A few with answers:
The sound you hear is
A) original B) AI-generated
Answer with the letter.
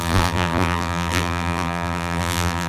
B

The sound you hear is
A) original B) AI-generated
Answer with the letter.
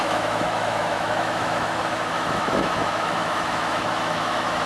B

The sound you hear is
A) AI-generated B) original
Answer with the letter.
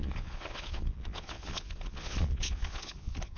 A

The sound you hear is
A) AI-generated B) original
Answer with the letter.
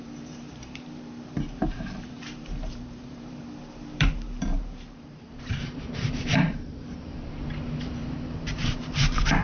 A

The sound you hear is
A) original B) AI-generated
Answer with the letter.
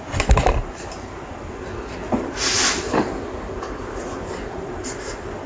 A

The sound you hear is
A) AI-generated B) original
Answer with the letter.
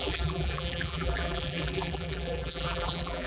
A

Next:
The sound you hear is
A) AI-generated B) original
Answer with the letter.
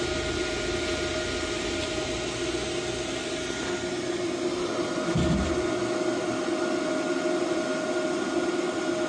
B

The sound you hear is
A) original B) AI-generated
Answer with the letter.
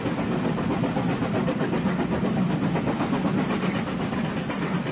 A